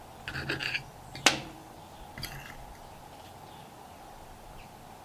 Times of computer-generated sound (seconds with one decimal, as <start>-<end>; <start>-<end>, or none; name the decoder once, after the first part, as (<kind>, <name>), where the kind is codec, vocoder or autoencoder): none